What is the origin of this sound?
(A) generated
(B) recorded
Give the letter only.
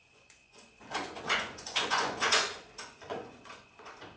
A